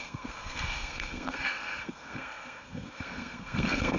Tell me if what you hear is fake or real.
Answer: fake